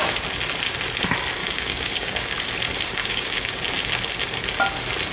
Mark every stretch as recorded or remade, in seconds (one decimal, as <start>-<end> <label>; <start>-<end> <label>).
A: 0.0-1.4 recorded; 1.4-2.3 remade; 2.3-3.0 recorded; 3.0-3.6 remade; 3.6-5.1 recorded